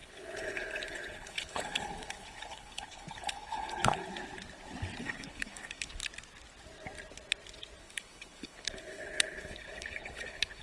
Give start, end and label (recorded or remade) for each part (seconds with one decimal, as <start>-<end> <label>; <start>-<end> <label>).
0.0-4.0 remade; 4.0-5.0 recorded; 5.0-6.0 remade; 6.0-7.8 recorded; 7.8-10.6 remade